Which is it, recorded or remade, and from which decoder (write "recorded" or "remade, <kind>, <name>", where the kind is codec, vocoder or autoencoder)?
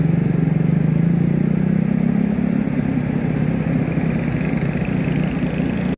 recorded